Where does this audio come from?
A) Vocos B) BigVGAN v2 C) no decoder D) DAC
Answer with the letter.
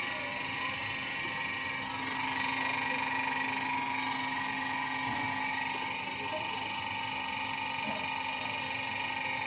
C